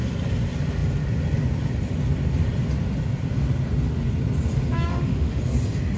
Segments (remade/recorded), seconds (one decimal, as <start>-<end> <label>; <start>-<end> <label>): 0.0-4.9 recorded; 4.9-5.4 remade; 5.4-6.0 recorded

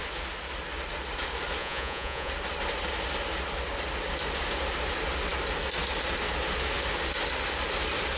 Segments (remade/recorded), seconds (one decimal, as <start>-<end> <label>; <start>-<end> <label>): 0.0-1.6 recorded; 1.6-2.3 remade; 2.3-8.2 recorded

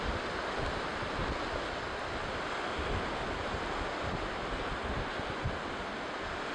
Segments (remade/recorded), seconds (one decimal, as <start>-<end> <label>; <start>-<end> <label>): 0.0-6.5 recorded

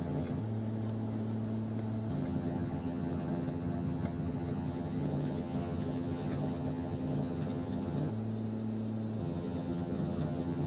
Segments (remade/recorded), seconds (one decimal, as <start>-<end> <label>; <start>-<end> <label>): 0.0-0.4 remade; 0.4-2.1 recorded; 2.1-8.1 remade; 8.1-9.2 recorded; 9.2-10.7 remade